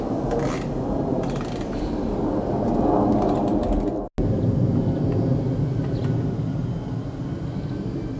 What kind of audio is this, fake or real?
real